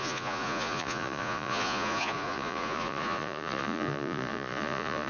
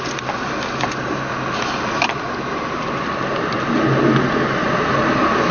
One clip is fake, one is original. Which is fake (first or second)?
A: first